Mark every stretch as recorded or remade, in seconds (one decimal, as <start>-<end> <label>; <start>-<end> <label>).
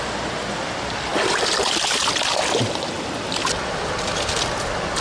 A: 0.0-5.0 recorded